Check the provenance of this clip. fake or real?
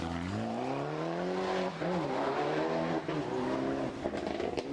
real